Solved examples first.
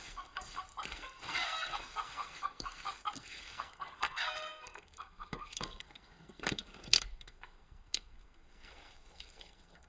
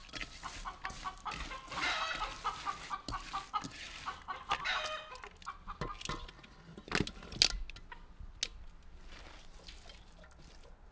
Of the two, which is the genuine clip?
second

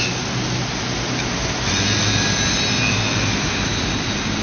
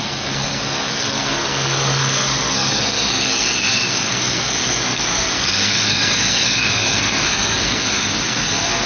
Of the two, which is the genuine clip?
first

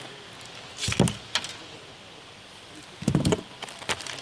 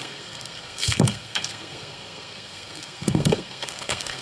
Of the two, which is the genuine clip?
first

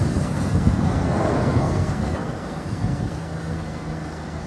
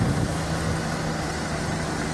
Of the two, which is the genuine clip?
second